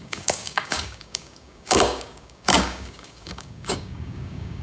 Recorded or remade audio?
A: remade